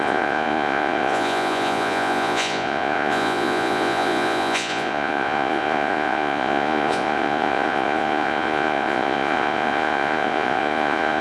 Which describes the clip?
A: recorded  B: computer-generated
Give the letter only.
B